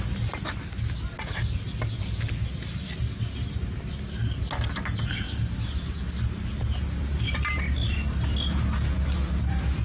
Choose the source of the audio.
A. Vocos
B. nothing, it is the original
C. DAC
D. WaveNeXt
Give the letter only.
B